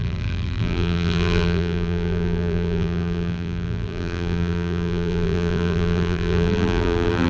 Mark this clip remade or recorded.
remade